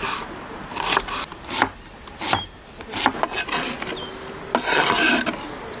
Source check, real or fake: real